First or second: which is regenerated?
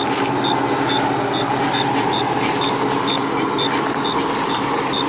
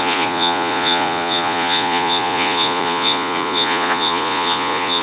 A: second